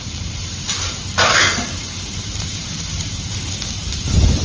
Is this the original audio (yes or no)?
no